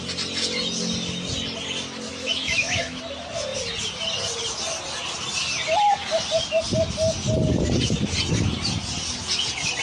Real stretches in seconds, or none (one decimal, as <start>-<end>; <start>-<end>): 0.0-2.1; 3.0-9.8